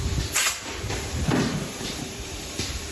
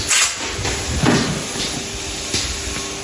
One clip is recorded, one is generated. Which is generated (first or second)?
first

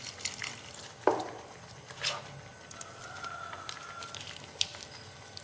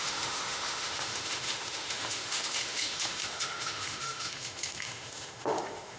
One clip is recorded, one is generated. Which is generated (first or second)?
second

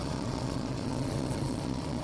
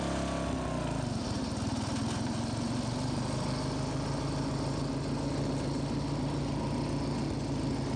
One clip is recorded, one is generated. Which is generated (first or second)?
first